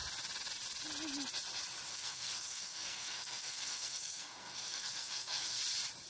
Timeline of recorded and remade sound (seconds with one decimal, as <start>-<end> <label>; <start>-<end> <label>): 0.0-1.9 recorded; 1.9-5.6 remade; 5.6-6.1 recorded